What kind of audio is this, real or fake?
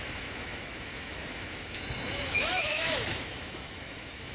fake